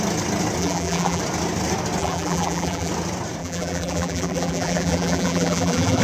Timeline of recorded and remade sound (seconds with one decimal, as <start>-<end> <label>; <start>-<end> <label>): 0.0-0.6 recorded; 0.6-1.2 remade; 1.2-2.0 recorded; 2.0-2.9 remade; 2.9-3.4 recorded; 3.4-6.0 remade